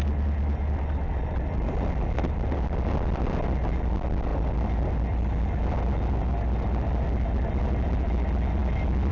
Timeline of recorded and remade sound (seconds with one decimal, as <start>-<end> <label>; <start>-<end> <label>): 0.0-9.1 recorded